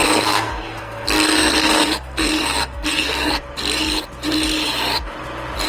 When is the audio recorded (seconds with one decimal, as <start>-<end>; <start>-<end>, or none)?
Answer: 3.4-5.7